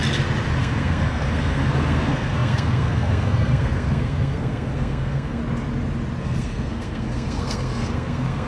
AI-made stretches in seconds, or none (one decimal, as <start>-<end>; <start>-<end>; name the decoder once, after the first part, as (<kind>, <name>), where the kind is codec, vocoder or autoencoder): 0.6-5.4 (codec, SNAC); 6.2-8.5